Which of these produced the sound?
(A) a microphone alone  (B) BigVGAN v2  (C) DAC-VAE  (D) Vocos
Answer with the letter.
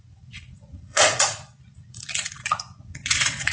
D